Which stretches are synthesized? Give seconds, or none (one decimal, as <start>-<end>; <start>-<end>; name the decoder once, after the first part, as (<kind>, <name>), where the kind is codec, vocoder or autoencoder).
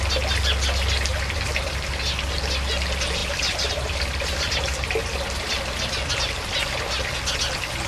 1.1-1.7 (vocoder, BigVGAN v2); 3.2-7.1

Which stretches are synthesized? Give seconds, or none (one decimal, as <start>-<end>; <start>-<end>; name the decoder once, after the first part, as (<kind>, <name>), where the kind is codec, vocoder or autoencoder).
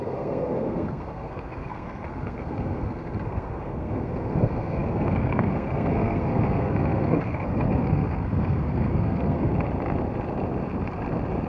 0.0-9.5 (codec, SNAC)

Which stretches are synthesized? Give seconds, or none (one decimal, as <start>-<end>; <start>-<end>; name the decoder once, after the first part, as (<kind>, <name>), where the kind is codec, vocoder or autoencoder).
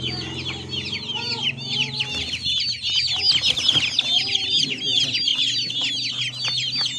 none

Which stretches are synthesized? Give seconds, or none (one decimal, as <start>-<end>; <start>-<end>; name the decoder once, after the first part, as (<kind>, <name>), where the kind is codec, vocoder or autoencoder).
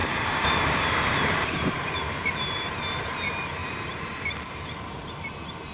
0.0-3.0 (vocoder, BigVGAN v2); 3.6-5.1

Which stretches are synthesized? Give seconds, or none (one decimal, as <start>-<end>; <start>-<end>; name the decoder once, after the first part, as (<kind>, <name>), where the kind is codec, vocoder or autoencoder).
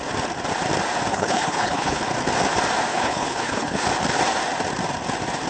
1.1-2.0 (codec, HILCodec); 2.9-3.9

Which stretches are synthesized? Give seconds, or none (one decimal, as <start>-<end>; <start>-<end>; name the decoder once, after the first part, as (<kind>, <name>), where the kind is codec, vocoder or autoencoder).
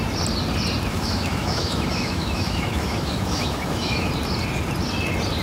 0.9-4.1 (autoencoder, DAC-VAE)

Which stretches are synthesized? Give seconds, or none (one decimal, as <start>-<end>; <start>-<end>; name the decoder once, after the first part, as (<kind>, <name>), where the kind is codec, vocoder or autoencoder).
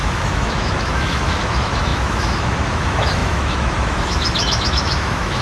0.0-5.4 (autoencoder, DAC-VAE)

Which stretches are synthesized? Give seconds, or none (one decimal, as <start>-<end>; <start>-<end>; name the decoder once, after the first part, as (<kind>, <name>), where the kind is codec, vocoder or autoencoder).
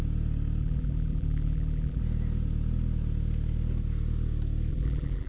0.6-2.0 (vocoder, BigVGAN v2); 4.7-5.3